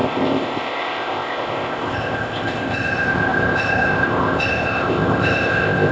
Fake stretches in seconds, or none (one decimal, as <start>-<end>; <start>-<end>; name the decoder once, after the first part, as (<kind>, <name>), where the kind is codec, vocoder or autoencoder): 0.0-5.9 (codec, ZipCodec)